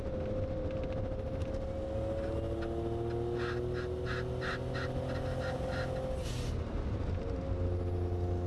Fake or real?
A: real